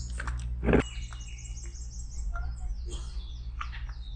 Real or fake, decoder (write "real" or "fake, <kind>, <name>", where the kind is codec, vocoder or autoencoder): real